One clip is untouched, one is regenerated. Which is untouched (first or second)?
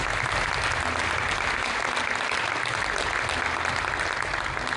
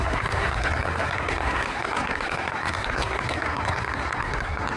first